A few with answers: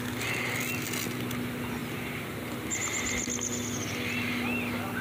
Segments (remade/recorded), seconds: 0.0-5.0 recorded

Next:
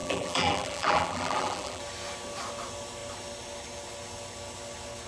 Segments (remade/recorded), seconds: 0.0-1.8 remade; 1.8-5.1 recorded

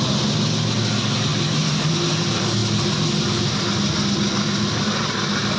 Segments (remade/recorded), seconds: 0.0-5.6 recorded

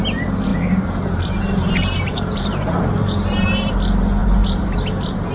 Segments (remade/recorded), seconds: 0.0-0.5 recorded; 0.5-3.7 remade; 3.7-4.2 recorded; 4.2-5.3 remade

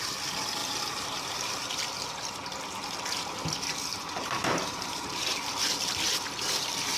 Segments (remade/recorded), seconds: 0.0-0.6 recorded; 0.6-1.7 remade; 1.7-3.9 recorded; 3.9-5.6 remade; 5.6-7.0 recorded

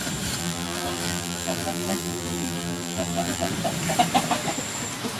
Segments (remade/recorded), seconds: 0.0-0.4 recorded; 0.4-3.5 remade; 3.5-5.2 recorded

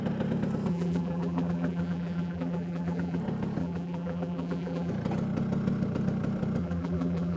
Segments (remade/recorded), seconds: 0.0-0.7 recorded; 0.7-3.2 remade; 3.2-3.6 recorded; 3.6-4.9 remade; 4.9-6.6 recorded; 6.6-7.4 remade